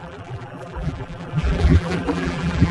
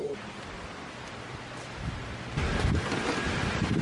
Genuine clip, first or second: second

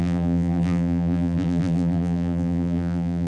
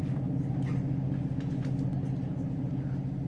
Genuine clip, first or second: second